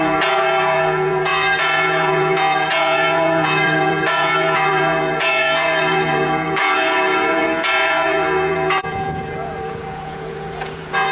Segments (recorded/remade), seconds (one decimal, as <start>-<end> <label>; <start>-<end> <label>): 0.0-11.1 remade